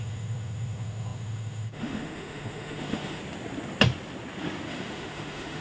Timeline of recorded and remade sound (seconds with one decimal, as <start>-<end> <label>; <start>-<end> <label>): 0.0-3.2 remade; 3.2-4.7 recorded; 4.7-5.6 remade